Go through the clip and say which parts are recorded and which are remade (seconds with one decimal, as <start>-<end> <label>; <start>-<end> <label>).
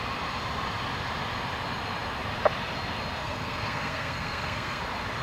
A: 0.0-3.2 recorded; 3.2-4.8 remade; 4.8-5.2 recorded